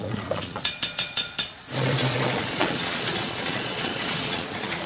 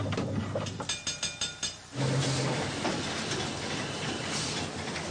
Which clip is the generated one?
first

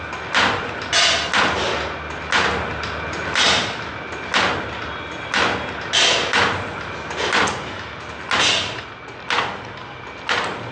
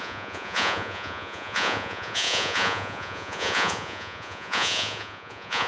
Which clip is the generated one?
second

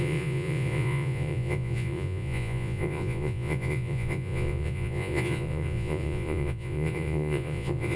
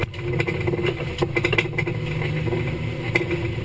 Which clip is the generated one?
first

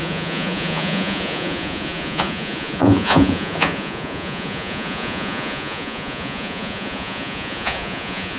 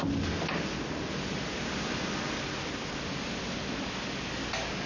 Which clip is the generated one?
first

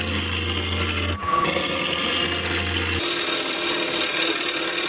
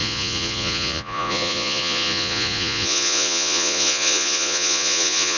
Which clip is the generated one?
second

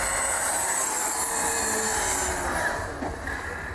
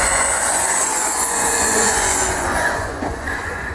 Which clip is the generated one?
second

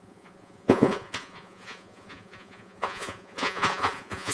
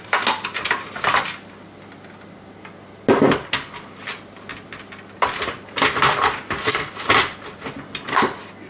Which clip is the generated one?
first